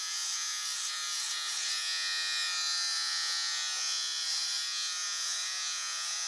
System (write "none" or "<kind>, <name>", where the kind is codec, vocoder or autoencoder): vocoder, Vocos